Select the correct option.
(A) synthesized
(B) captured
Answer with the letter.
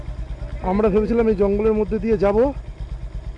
B